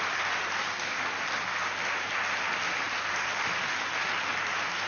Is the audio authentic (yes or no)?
yes